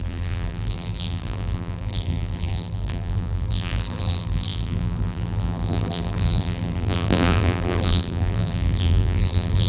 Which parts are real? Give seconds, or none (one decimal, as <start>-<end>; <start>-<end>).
none